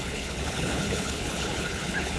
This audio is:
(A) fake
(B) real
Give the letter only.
A